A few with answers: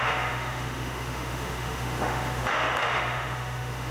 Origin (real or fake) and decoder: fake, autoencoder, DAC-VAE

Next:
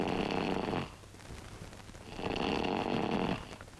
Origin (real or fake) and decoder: real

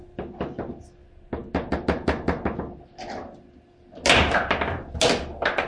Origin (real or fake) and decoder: real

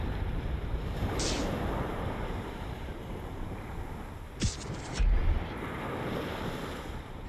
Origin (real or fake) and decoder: fake, vocoder, BigVGAN v2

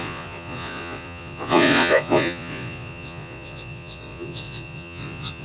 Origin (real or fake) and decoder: fake, vocoder, Vocos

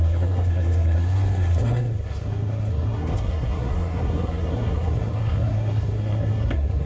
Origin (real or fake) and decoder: fake, codec, SNAC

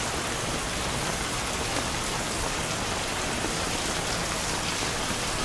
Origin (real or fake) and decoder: real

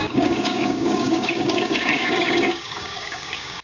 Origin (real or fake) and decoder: fake, codec, DAC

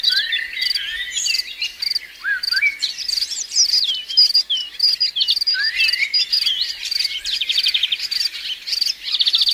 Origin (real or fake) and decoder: fake, vocoder, BigVGAN v2